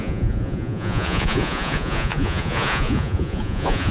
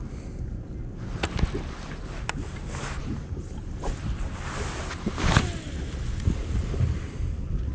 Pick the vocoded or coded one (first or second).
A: first